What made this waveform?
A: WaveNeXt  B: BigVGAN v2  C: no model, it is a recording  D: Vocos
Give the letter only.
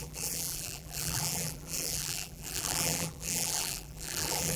B